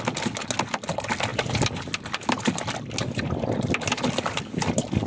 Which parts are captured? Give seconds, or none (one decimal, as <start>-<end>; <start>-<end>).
0.0-5.1